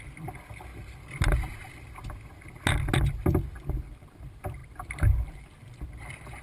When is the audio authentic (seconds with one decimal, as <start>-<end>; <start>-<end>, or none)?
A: 0.0-6.4